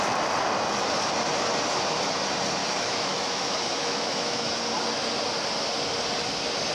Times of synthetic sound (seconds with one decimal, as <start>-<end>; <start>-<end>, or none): 2.6-4.5